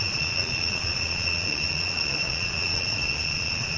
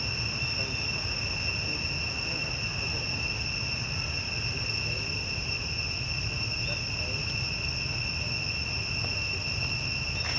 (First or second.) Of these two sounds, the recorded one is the second